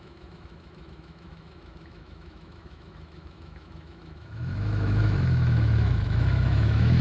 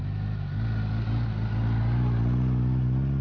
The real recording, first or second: second